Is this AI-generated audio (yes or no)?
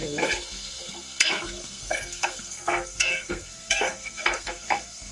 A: yes